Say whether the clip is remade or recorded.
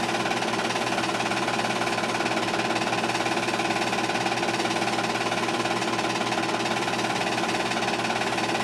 recorded